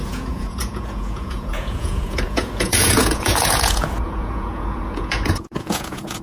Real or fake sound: fake